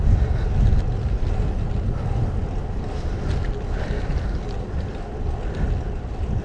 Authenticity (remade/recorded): recorded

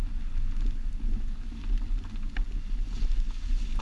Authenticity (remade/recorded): recorded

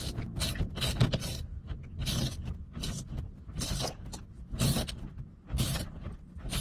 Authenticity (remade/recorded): remade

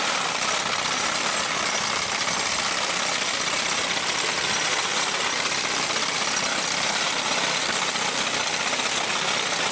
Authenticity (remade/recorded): recorded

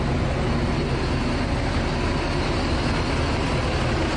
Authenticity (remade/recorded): recorded